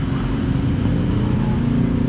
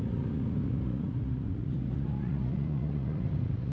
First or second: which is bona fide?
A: first